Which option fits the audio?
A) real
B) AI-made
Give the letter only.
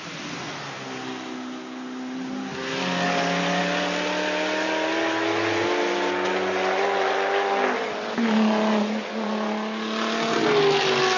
A